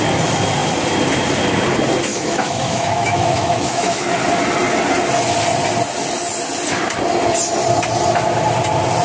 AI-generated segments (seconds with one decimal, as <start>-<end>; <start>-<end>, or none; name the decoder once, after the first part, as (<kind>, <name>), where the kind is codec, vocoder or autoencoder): 2.1-4.1 (autoencoder, DAC-VAE)